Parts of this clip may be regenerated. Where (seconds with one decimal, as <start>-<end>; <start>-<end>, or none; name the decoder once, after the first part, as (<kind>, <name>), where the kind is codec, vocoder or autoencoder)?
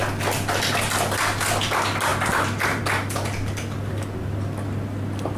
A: none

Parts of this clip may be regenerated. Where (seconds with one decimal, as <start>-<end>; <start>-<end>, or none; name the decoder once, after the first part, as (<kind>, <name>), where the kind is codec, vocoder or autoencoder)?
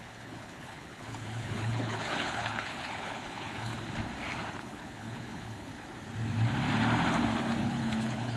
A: 0.0-3.7 (codec, HILCodec); 4.6-5.7; 7.6-8.4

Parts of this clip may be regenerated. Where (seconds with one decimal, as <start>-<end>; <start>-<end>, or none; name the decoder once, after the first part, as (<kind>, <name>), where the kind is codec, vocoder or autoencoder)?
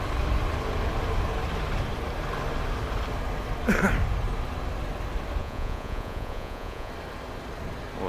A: 5.4-6.9 (vocoder, Vocos)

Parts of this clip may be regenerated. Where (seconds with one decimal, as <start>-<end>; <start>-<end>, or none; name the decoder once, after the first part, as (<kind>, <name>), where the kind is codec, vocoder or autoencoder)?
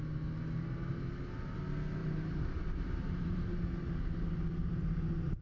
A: 2.0-3.6 (vocoder, BigVGAN v2)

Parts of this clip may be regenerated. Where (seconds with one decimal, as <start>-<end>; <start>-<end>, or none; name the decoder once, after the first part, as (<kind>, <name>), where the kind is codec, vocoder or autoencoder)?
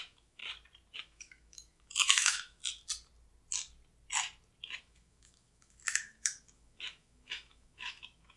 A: 0.0-0.4 (autoencoder, DAC-VAE); 1.0-2.6; 4.8-8.4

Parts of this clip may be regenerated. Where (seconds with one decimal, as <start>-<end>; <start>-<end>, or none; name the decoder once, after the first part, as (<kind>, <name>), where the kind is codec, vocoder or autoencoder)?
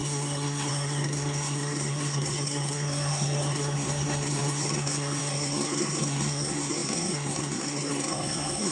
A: 0.0-8.7 (codec, SNAC)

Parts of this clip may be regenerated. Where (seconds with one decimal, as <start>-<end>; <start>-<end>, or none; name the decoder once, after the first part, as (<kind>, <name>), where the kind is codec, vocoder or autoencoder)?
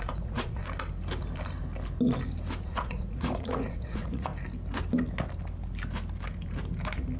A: 0.0-0.6 (vocoder, Vocos); 2.6-4.3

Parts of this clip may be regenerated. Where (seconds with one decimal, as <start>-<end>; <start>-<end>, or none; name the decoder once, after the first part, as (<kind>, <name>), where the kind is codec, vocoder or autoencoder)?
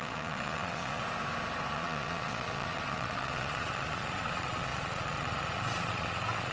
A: 0.0-1.0 (vocoder, Vocos); 1.7-6.5